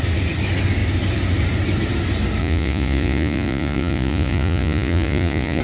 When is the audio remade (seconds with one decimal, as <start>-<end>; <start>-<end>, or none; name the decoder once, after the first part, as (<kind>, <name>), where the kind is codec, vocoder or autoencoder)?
2.4-5.6 (vocoder, Vocos)